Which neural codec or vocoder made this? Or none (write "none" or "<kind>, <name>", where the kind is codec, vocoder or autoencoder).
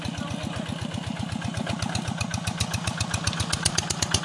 none